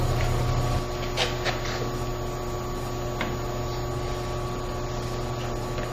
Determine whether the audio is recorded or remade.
recorded